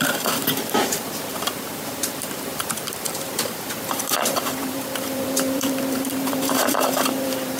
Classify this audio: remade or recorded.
remade